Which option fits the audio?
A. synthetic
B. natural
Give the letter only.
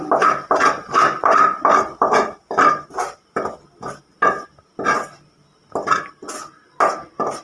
B